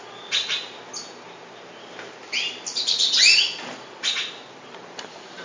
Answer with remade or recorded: recorded